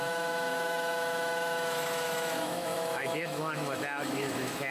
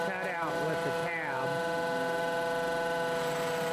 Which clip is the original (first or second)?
second